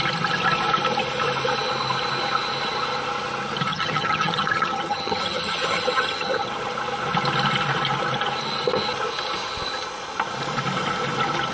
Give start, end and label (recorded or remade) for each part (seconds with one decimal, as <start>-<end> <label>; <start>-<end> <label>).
0.0-3.7 recorded; 3.7-6.5 remade; 6.5-11.5 recorded